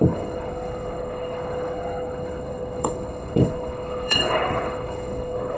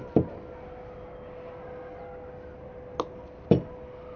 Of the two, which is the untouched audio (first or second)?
second